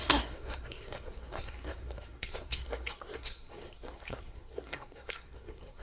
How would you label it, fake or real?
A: fake